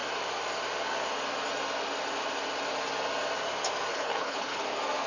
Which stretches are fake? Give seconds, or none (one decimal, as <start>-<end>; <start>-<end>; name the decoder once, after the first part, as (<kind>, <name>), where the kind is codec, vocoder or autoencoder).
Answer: 3.9-4.6 (codec, HILCodec)